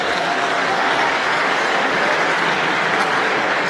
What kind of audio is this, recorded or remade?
remade